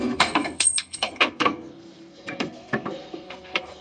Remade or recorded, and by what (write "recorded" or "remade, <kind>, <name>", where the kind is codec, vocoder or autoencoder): remade, codec, SNAC